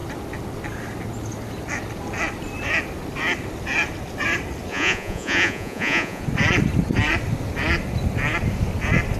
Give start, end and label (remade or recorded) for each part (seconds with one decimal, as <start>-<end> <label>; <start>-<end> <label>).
0.0-4.7 recorded; 4.7-6.2 remade; 6.2-9.2 recorded